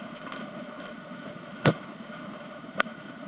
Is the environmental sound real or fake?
fake